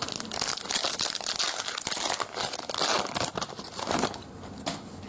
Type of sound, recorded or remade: recorded